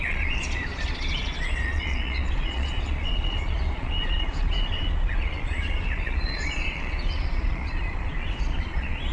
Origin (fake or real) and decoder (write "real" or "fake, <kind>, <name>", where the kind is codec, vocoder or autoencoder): fake, vocoder, Vocos